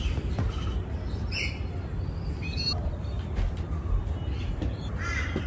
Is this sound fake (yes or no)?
no